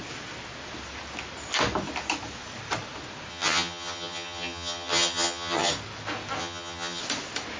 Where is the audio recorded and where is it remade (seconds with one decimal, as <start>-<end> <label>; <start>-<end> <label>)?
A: 0.0-3.3 recorded; 3.3-5.7 remade; 5.7-6.4 recorded; 6.4-7.0 remade; 7.0-7.6 recorded